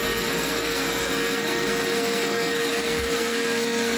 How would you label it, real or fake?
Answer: fake